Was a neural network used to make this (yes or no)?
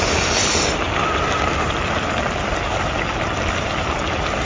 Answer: no